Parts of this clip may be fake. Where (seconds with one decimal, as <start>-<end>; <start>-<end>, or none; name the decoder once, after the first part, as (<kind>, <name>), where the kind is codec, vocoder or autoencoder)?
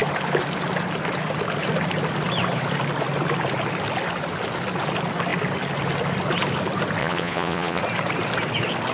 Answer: 7.0-7.8 (vocoder, Vocos)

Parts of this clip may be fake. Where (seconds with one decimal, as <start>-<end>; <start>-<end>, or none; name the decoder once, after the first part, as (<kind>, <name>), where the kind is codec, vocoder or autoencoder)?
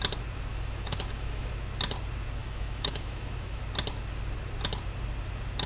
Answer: 0.5-1.5 (autoencoder, DAC-VAE); 2.4-3.6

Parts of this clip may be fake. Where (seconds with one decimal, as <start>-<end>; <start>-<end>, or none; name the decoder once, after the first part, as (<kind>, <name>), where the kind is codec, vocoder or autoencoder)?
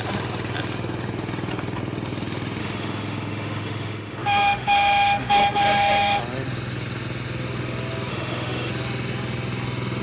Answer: 2.6-6.2 (autoencoder, DAC-VAE); 8.1-8.7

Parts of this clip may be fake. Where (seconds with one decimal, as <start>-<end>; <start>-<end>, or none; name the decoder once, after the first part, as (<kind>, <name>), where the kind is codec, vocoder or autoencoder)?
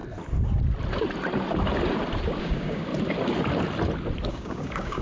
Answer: 2.4-2.9 (codec, DAC); 4.3-5.0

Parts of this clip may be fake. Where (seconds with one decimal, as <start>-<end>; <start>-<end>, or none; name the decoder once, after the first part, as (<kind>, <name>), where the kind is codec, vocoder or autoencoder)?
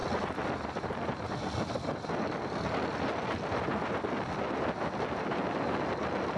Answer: none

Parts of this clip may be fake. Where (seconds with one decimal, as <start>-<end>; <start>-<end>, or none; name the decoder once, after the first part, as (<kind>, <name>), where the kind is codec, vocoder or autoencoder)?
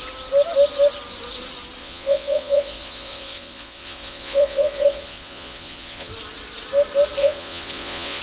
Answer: 1.8-6.1 (vocoder, Vocos); 7.2-8.2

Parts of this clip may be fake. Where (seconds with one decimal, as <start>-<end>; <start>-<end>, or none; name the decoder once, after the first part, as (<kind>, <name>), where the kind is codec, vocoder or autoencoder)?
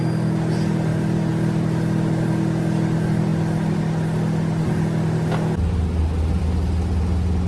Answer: none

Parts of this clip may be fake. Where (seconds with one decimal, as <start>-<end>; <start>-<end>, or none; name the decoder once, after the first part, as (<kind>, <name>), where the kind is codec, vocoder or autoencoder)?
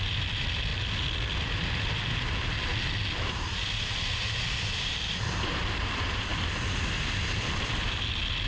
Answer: none